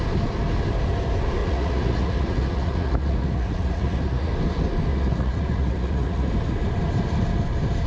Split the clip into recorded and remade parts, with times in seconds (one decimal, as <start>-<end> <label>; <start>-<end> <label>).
0.0-1.4 recorded; 1.4-4.3 remade; 4.3-4.9 recorded; 4.9-6.3 remade; 6.3-7.9 recorded